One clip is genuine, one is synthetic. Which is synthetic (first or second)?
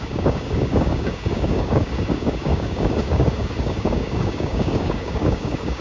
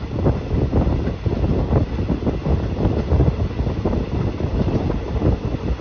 first